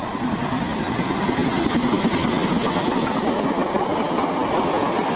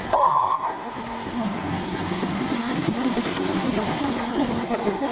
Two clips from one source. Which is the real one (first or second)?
first